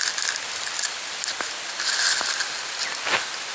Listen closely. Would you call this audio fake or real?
real